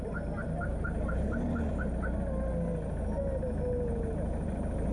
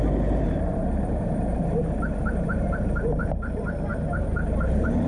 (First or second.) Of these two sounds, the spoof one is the second